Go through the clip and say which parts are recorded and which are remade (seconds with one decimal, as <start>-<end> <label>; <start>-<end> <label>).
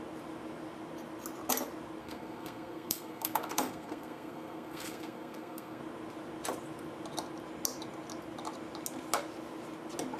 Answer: 0.0-2.0 recorded; 2.0-5.8 remade; 5.8-10.2 recorded